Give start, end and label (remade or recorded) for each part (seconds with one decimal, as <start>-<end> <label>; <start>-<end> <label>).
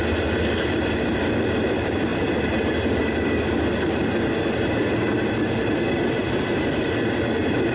0.0-7.7 recorded